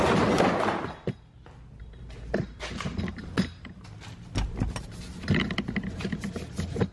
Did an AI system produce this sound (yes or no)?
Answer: no